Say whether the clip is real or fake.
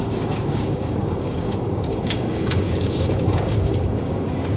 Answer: fake